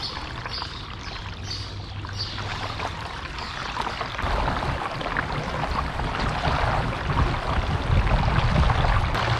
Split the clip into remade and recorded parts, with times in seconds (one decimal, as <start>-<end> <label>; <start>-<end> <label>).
0.0-2.5 recorded; 2.5-3.8 remade; 3.8-9.4 recorded